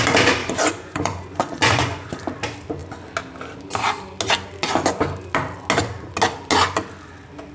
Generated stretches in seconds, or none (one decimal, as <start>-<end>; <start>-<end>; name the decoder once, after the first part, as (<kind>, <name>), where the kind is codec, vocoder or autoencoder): 0.4-2.1 (vocoder, Vocos)